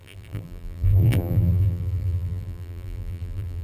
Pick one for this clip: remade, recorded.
remade